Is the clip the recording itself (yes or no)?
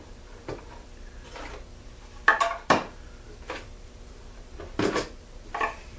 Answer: no